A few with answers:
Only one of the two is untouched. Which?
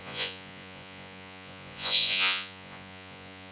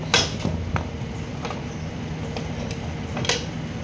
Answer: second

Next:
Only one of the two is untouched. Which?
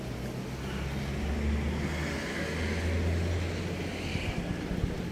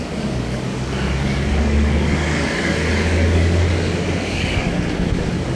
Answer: first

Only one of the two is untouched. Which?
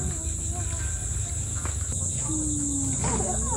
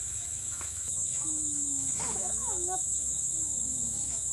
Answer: first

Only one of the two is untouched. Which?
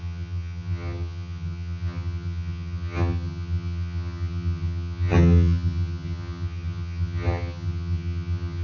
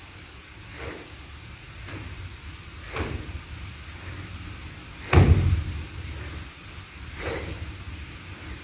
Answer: second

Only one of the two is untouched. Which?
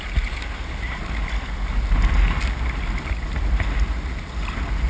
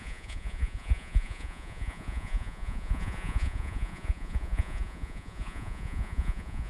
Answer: first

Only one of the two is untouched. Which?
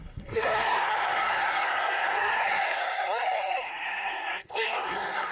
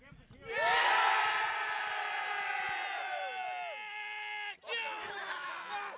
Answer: second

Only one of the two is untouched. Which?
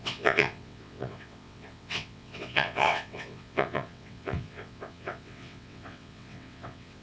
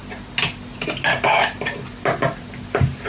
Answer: second